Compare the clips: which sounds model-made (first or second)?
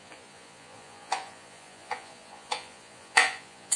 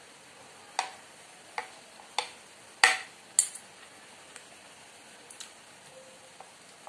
first